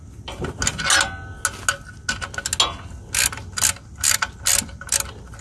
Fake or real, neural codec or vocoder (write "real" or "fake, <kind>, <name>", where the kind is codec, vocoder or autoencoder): real